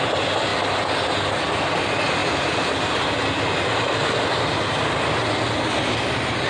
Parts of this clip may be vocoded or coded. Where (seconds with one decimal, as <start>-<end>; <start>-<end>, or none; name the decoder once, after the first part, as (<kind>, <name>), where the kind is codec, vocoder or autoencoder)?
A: none

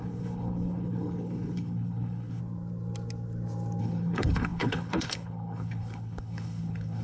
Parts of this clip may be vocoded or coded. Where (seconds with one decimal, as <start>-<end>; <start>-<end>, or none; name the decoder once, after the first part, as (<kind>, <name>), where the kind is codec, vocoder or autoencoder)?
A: 0.0-2.4 (codec, HILCodec); 3.8-7.0